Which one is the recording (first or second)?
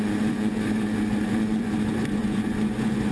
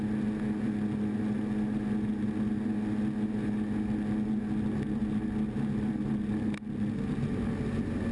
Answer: second